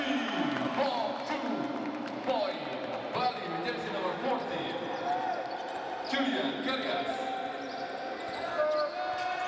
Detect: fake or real real